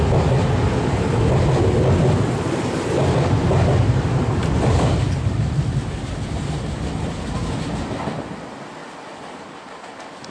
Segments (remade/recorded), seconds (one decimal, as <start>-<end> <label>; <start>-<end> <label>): 0.0-10.3 recorded